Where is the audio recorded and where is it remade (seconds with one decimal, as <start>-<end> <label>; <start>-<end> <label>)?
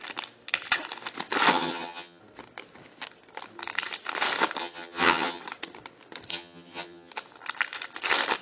0.0-1.5 recorded; 1.5-2.2 remade; 2.2-4.6 recorded; 4.6-5.4 remade; 5.4-6.3 recorded; 6.3-7.1 remade; 7.1-8.4 recorded